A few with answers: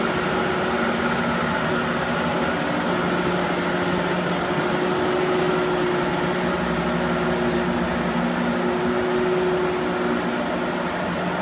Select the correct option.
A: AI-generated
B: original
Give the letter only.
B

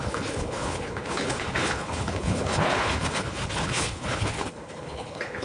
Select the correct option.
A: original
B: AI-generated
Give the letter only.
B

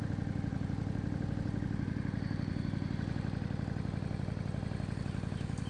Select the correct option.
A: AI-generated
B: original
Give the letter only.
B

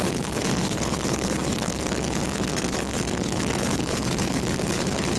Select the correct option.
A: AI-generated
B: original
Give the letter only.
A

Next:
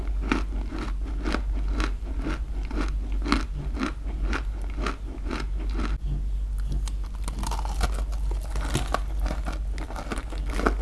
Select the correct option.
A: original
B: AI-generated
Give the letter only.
A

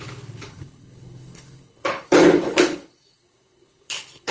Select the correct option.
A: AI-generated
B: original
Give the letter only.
A